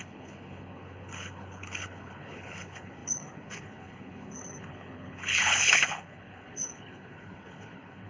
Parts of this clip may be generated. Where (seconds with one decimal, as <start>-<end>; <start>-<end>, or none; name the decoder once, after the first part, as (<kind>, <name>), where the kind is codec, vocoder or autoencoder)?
0.0-8.1 (codec, HILCodec)